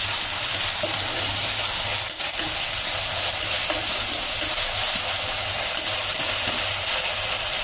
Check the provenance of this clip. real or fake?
real